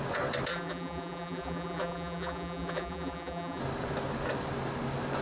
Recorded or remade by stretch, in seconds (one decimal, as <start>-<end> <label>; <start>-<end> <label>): 0.0-0.5 recorded; 0.5-3.6 remade; 3.6-5.2 recorded